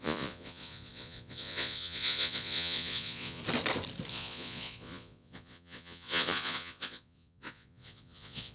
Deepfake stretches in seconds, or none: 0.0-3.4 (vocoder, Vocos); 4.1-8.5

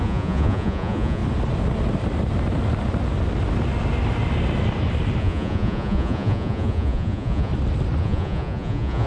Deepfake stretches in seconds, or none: 0.0-1.2 (vocoder, Vocos); 5.2-7.5; 8.0-9.1

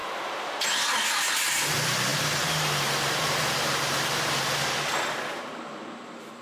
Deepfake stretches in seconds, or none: 0.0-0.6 (vocoder, BigVGAN v2); 2.1-4.6